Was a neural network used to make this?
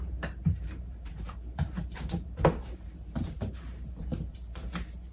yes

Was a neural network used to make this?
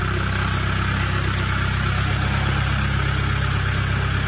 no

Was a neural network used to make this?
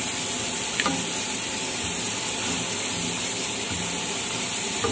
yes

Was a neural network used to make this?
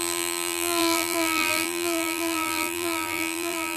yes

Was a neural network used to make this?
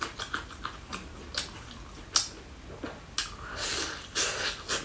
no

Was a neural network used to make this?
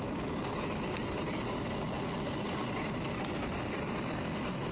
yes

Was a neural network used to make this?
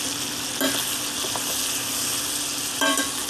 no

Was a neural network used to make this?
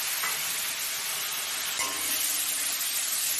no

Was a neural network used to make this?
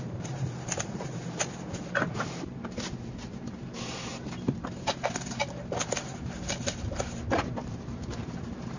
yes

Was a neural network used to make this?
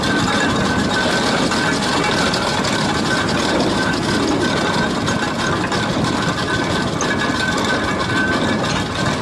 no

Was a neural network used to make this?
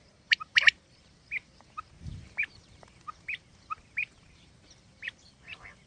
yes